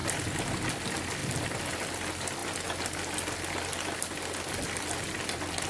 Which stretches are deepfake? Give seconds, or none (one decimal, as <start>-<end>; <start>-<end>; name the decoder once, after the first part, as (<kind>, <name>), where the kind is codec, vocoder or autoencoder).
1.2-1.7 (vocoder, BigVGAN v2)